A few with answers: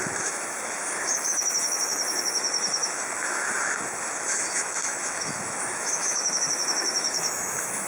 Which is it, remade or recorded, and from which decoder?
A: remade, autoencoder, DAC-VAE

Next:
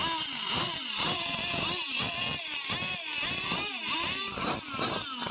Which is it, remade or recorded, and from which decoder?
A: recorded